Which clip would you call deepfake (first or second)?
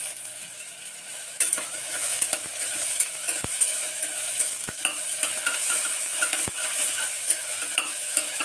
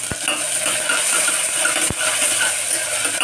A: first